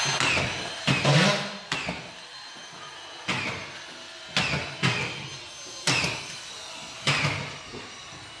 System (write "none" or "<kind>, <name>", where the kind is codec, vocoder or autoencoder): none